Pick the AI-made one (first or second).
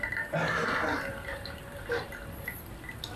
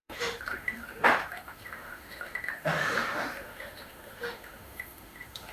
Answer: second